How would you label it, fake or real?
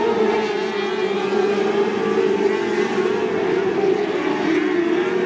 real